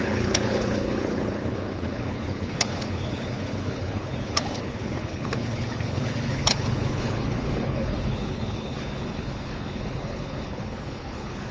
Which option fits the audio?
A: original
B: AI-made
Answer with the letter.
B